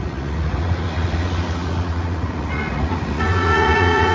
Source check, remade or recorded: remade